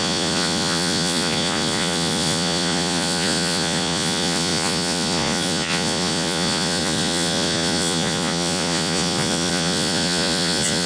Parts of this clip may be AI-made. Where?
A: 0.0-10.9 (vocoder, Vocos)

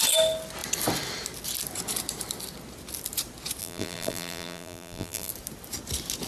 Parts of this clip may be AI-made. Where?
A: 3.6-5.3 (vocoder, BigVGAN v2)